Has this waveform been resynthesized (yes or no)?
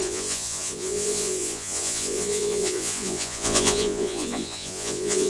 yes